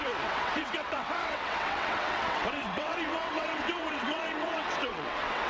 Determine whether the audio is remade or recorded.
remade